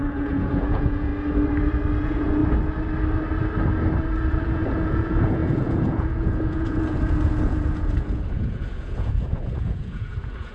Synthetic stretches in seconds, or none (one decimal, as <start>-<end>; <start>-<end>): 0.0-1.1; 2.0-2.4; 4.3-10.5